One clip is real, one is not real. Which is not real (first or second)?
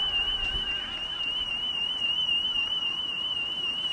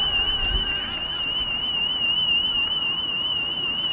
first